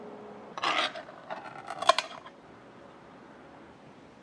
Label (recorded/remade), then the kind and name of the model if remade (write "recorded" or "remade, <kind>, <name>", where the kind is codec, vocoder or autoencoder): remade, vocoder, BigVGAN v2